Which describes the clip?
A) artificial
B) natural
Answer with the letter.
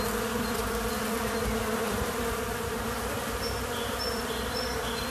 A